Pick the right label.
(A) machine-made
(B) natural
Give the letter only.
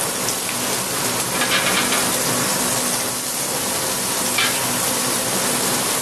B